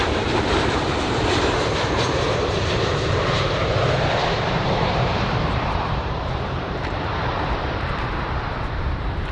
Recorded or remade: remade